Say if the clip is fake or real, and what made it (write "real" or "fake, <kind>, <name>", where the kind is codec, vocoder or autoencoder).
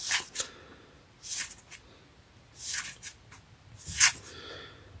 real